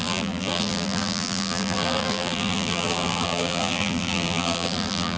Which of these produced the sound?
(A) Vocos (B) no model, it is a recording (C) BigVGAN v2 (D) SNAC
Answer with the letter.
C